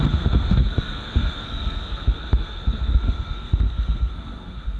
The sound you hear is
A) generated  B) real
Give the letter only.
A